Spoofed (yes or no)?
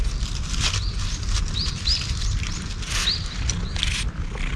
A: no